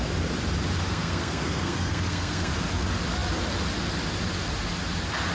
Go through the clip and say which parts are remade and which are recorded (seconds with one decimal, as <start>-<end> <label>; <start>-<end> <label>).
0.0-0.9 recorded; 0.9-2.5 remade; 2.5-5.3 recorded